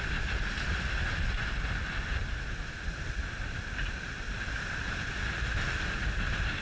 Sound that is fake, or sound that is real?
real